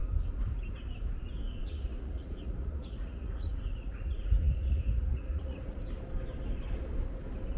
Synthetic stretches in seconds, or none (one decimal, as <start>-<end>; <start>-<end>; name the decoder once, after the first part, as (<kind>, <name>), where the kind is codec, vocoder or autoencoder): 1.6-5.8 (vocoder, Vocos)